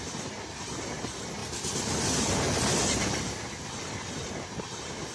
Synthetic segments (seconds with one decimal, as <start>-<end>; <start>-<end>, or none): none